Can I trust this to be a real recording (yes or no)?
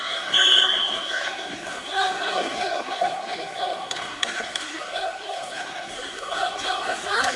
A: no